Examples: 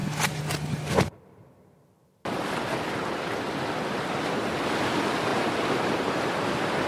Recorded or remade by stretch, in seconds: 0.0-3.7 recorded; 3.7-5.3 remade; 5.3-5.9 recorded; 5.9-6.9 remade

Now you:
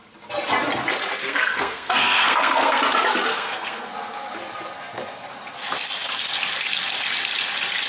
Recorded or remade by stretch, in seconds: 0.0-1.2 recorded; 1.2-2.8 remade; 2.8-3.3 recorded; 3.3-3.9 remade; 3.9-7.9 recorded

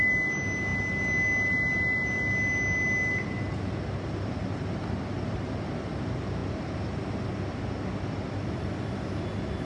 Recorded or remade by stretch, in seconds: 0.0-9.6 recorded

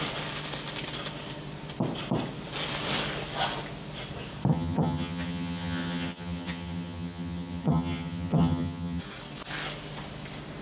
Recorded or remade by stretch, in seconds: 0.0-4.5 recorded; 4.5-9.0 remade; 9.0-10.6 recorded

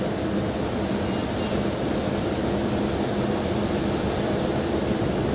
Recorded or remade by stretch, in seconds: 0.0-5.3 recorded

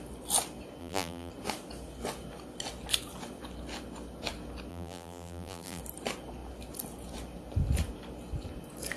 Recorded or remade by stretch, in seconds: 0.0-0.8 recorded; 0.8-1.3 remade; 1.3-4.7 recorded; 4.7-5.8 remade; 5.8-9.0 recorded